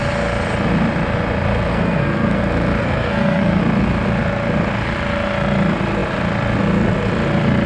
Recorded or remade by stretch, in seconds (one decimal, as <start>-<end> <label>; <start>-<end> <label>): 0.0-1.7 recorded; 1.7-2.4 remade; 2.4-2.8 recorded; 2.8-3.6 remade; 3.6-7.7 recorded